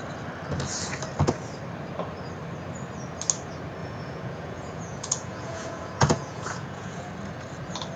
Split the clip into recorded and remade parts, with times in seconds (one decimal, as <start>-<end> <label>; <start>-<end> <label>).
0.0-3.8 recorded; 3.8-7.1 remade; 7.1-8.0 recorded